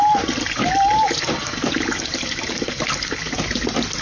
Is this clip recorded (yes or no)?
yes